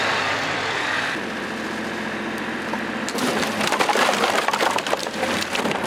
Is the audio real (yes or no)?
no